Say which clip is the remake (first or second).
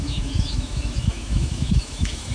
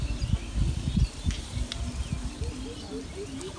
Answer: first